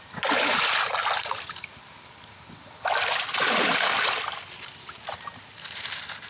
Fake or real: real